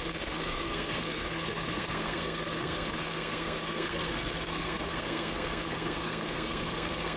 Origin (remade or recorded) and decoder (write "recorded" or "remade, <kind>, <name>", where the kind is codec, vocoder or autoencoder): remade, codec, SNAC